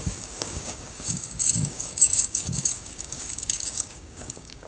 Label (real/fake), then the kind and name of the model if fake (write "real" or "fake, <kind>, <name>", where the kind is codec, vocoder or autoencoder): fake, codec, DAC